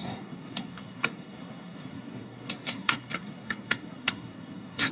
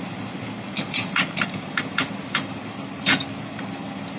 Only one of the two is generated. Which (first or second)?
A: first